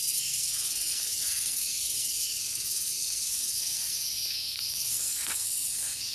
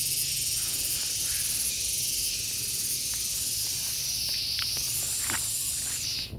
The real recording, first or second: second